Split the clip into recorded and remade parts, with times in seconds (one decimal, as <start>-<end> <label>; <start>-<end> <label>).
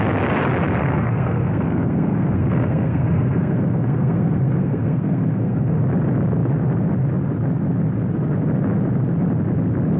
0.0-0.8 recorded; 0.8-5.8 remade; 5.8-10.0 recorded